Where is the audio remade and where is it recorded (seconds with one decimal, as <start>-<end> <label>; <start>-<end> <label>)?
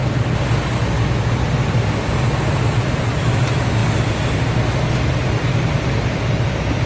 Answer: 0.0-2.5 recorded; 2.5-3.8 remade; 3.8-5.0 recorded; 5.0-6.9 remade